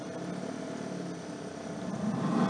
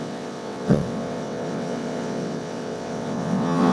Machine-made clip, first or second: second